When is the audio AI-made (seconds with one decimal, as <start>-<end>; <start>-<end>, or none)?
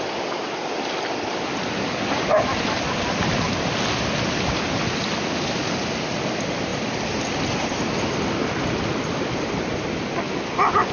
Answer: none